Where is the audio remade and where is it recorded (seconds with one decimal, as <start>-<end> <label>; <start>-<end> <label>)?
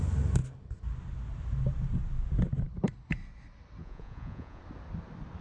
0.0-3.8 recorded; 3.8-4.6 remade; 4.6-5.4 recorded